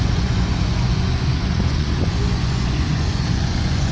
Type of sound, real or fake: fake